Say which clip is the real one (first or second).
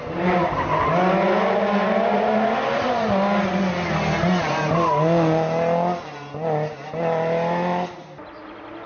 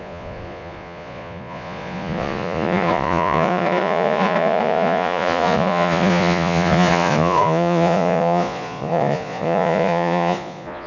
first